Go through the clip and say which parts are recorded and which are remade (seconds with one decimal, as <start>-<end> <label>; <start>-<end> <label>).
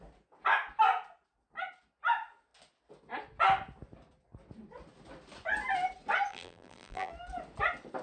0.0-6.3 recorded; 6.3-7.1 remade; 7.1-8.0 recorded